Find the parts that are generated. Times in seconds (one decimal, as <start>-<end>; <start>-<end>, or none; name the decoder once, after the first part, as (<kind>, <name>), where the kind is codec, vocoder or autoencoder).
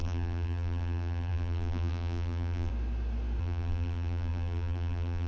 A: 0.0-2.7 (vocoder, BigVGAN v2); 3.4-5.3